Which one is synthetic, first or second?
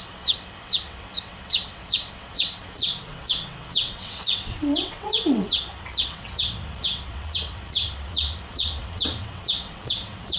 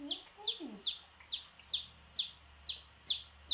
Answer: first